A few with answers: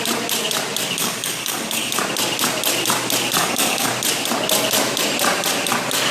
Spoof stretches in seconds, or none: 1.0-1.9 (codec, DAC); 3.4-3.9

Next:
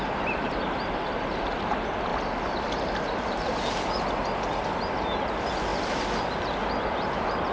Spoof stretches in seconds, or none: none

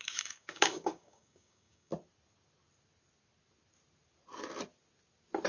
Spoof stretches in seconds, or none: 0.0-1.9 (codec, DAC)